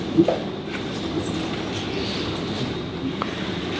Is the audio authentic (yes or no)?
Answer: yes